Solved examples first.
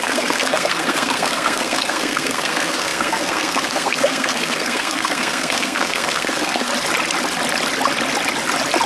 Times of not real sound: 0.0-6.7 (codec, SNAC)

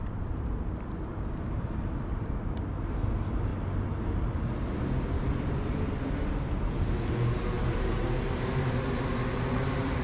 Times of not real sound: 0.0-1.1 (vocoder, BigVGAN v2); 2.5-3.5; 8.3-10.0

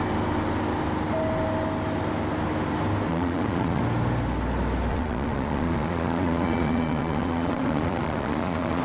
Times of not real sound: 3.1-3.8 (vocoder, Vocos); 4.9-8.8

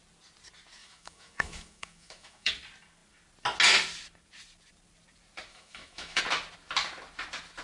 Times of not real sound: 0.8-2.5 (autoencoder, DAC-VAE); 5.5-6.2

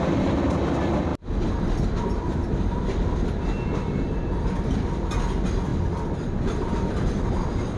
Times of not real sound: none

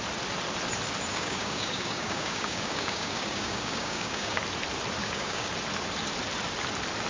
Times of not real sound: 1.1-4.4 (codec, DAC); 5.0-5.5

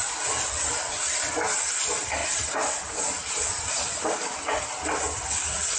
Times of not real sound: none